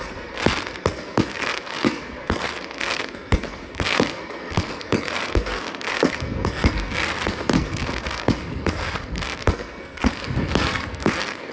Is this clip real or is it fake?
fake